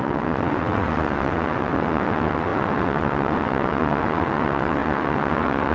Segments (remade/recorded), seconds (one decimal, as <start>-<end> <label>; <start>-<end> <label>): 0.0-5.7 remade